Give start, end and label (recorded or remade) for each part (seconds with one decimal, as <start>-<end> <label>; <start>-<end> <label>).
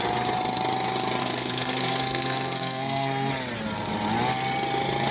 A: 0.0-1.2 recorded; 1.2-3.3 remade; 3.3-5.1 recorded